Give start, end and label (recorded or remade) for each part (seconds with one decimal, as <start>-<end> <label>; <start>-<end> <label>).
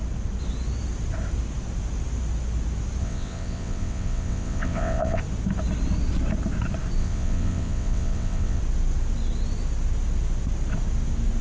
0.0-3.0 recorded; 3.0-5.2 remade; 5.2-7.0 recorded; 7.0-8.6 remade; 8.6-11.4 recorded